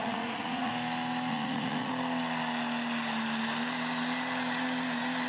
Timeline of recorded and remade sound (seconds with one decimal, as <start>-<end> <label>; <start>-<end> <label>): 0.0-0.7 remade; 0.7-1.3 recorded; 1.3-1.9 remade; 1.9-5.3 recorded